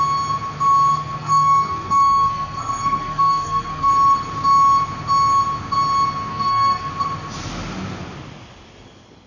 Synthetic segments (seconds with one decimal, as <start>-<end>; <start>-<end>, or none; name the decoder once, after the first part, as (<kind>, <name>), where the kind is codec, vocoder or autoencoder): 0.9-3.9 (codec, SNAC); 6.3-6.9